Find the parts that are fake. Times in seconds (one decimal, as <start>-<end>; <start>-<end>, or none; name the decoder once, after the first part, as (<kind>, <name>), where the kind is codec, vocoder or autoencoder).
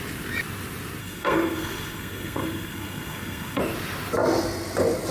1.0-3.6 (codec, SNAC)